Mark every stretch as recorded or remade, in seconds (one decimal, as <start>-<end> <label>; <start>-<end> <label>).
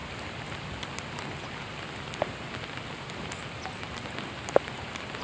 0.0-5.2 recorded